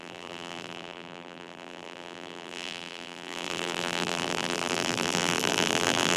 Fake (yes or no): yes